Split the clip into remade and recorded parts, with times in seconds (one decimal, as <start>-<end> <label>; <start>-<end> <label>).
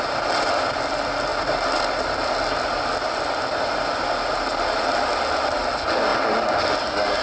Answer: 0.0-7.2 recorded